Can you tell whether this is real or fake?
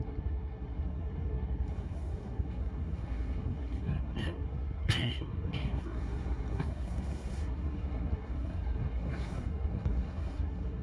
fake